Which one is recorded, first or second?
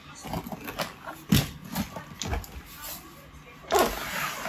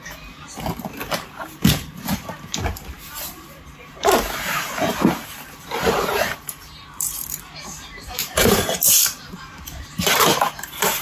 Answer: first